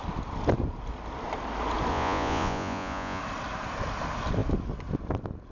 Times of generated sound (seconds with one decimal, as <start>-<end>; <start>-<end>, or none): 1.9-3.2